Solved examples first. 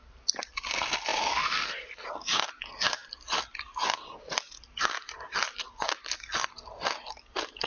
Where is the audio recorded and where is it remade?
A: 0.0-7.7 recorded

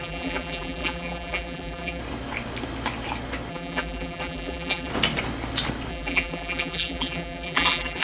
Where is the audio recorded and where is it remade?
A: 0.0-2.0 remade; 2.0-3.5 recorded; 3.5-4.9 remade; 4.9-5.9 recorded; 5.9-8.0 remade

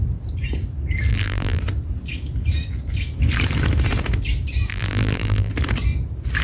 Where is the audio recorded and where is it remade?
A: 0.0-1.1 recorded; 1.1-1.6 remade; 1.6-4.7 recorded; 4.7-5.5 remade; 5.5-6.4 recorded

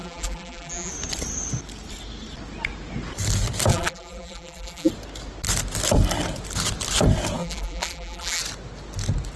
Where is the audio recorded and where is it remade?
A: 0.0-0.9 remade; 0.9-3.7 recorded; 3.7-4.9 remade; 4.9-7.4 recorded; 7.4-8.4 remade; 8.4-9.4 recorded

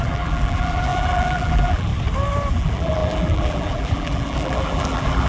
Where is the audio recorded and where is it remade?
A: 0.0-1.9 remade; 1.9-2.5 recorded; 2.5-5.3 remade

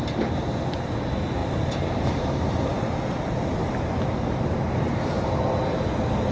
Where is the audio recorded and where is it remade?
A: 0.0-1.4 recorded; 1.4-2.6 remade; 2.6-3.6 recorded; 3.6-5.4 remade; 5.4-6.3 recorded